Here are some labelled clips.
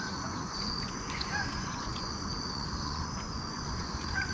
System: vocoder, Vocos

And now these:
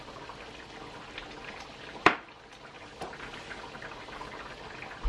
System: none